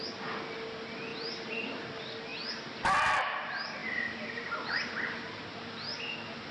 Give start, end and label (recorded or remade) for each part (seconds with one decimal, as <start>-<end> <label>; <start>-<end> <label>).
0.0-1.1 recorded; 1.1-1.8 remade; 1.8-3.8 recorded; 3.8-5.4 remade; 5.4-6.5 recorded